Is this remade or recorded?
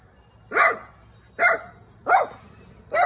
recorded